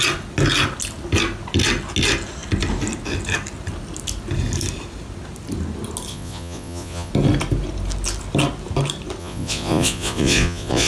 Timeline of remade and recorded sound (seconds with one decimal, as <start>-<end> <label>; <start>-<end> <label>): 0.0-6.1 recorded; 6.1-7.1 remade; 7.1-9.2 recorded; 9.2-10.9 remade